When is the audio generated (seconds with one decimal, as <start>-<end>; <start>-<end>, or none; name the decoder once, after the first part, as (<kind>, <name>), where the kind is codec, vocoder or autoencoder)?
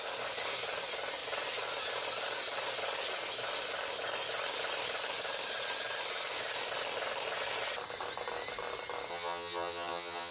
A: 9.1-10.3 (vocoder, HiFi-GAN)